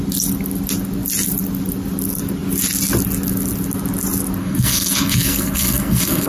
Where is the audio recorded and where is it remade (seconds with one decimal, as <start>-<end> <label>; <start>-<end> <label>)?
0.0-4.4 recorded; 4.4-6.3 remade